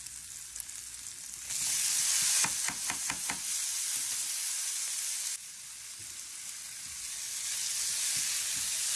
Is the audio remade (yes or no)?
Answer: no